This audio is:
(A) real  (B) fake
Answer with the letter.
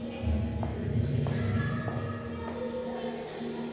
A